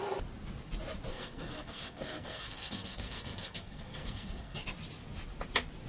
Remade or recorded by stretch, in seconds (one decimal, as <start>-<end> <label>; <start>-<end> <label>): 0.0-1.1 recorded; 1.1-4.6 remade; 4.6-5.9 recorded